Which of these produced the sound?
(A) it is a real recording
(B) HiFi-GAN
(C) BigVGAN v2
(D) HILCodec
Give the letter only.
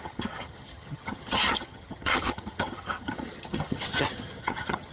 B